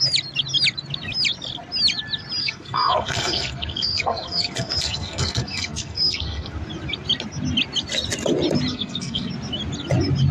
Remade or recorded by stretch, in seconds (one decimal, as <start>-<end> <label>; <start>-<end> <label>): 0.0-2.4 recorded; 2.4-6.5 remade; 6.5-8.7 recorded; 8.7-9.3 remade; 9.3-10.3 recorded